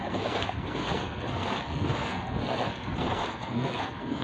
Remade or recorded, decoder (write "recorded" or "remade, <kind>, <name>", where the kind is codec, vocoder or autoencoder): remade, codec, SNAC